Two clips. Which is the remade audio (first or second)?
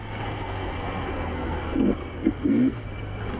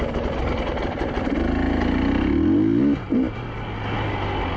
first